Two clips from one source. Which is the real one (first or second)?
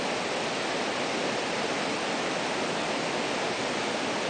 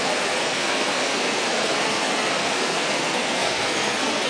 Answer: first